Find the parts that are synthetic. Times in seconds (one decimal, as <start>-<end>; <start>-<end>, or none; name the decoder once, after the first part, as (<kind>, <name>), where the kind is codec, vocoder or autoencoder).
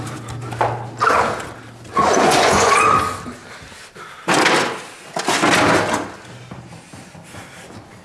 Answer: 2.0-2.7 (vocoder, Vocos)